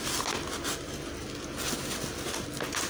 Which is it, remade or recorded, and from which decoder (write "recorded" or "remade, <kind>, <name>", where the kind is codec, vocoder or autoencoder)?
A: recorded